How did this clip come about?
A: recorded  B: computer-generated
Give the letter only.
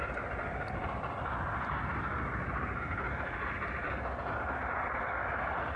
A